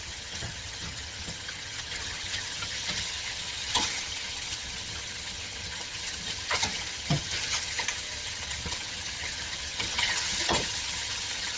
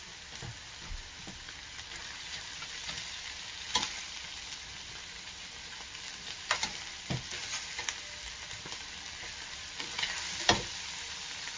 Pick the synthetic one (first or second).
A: first